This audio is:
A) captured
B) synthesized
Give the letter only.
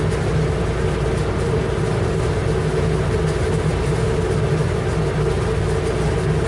A